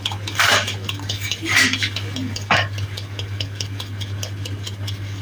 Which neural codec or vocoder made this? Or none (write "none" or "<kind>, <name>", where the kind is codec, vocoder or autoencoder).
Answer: codec, DAC